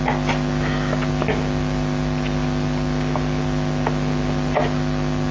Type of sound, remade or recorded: recorded